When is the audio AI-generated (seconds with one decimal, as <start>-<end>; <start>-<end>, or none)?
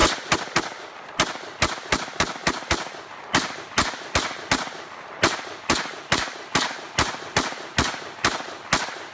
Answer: none